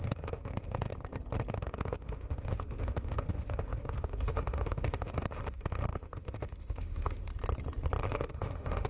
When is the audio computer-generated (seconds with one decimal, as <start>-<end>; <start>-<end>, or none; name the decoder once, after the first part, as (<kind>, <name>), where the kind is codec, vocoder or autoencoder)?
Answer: 0.0-0.9 (autoencoder, DAC-VAE); 1.5-7.3; 8.0-8.9